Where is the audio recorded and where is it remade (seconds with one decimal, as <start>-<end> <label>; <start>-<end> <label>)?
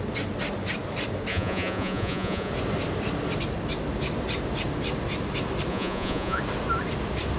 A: 0.0-1.3 recorded; 1.3-2.5 remade; 2.5-5.7 recorded; 5.7-6.4 remade; 6.4-7.4 recorded